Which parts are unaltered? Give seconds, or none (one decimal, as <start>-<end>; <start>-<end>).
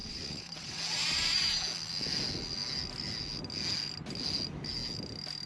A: 0.8-5.5